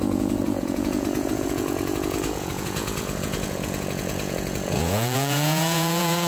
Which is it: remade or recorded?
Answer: remade